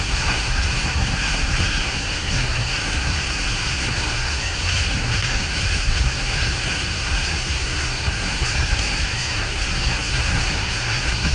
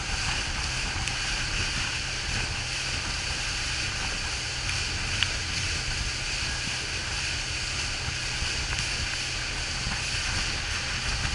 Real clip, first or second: second